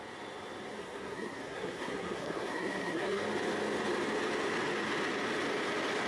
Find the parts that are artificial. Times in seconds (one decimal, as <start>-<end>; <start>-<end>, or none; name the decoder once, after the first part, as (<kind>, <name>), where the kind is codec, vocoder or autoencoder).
0.8-3.2 (codec, SNAC)